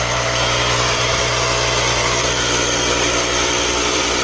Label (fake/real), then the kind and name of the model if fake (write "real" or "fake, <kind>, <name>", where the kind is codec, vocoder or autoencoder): fake, vocoder, BigVGAN v2